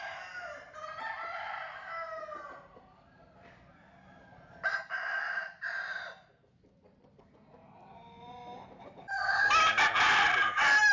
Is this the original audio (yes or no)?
yes